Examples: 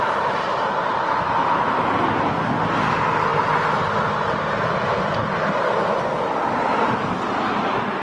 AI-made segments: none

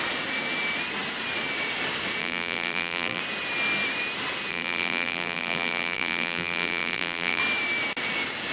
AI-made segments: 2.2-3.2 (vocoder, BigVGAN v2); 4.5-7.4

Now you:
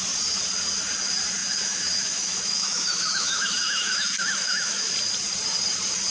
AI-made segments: 1.4-4.9 (autoencoder, DAC-VAE)